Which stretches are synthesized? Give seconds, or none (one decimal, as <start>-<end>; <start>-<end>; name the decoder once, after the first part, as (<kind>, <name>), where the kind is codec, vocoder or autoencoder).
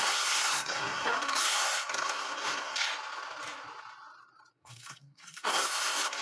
0.0-2.9 (codec, SNAC); 4.5-6.2